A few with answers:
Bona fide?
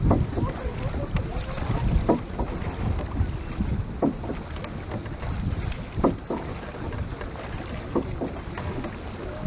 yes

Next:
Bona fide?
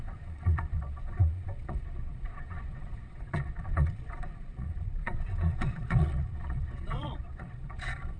no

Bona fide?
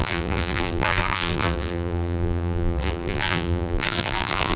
no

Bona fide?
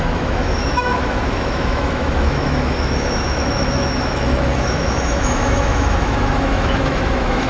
no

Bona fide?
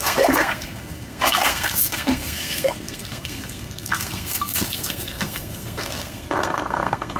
no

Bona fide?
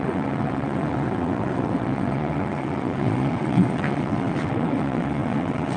no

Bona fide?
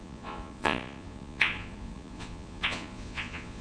no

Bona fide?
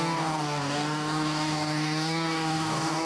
no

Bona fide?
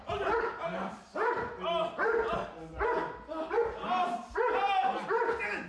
yes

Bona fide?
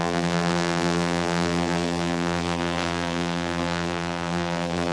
no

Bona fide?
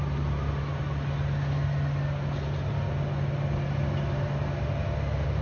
yes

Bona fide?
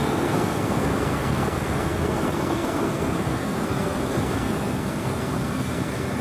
no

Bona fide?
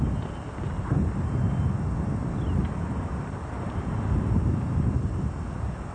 yes